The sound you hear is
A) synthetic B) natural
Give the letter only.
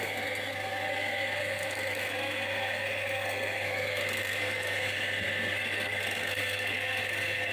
A